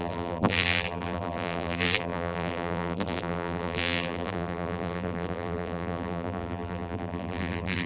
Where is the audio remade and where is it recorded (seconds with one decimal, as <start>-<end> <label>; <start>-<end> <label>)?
0.0-7.9 remade